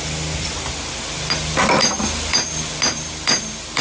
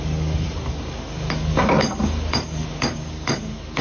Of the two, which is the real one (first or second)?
first